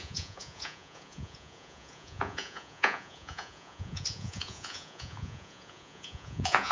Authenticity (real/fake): fake